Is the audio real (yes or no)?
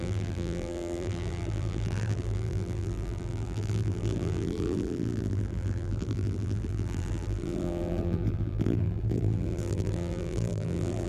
no